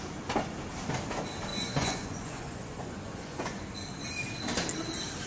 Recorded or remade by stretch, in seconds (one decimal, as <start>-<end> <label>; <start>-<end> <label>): 0.0-1.5 recorded; 1.5-3.6 remade; 3.6-5.3 recorded